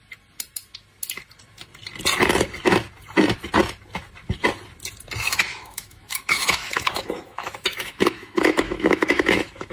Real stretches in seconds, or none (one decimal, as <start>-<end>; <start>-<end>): 0.0-5.5